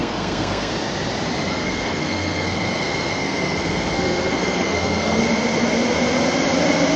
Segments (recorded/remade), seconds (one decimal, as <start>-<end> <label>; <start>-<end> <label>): 0.0-0.7 remade; 0.7-1.5 recorded; 1.5-5.2 remade; 5.2-7.0 recorded